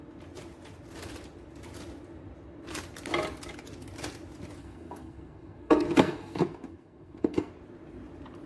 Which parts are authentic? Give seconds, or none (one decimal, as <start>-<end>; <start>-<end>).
0.0-4.6; 7.5-8.5